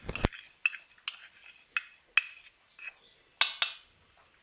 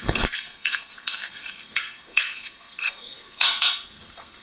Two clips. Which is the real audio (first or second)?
first